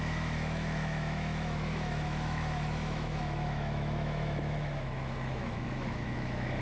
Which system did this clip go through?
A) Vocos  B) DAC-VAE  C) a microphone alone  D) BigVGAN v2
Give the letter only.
B